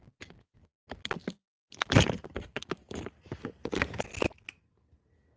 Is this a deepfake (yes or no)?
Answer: no